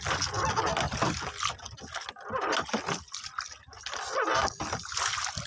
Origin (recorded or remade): recorded